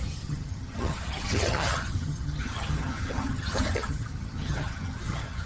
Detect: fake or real fake